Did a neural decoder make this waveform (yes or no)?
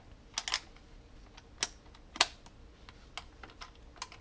no